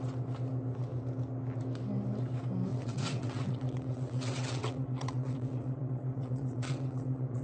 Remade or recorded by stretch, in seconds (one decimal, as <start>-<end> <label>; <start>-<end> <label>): 0.0-2.7 recorded; 2.7-7.4 remade